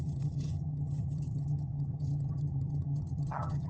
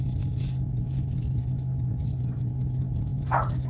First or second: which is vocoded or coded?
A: first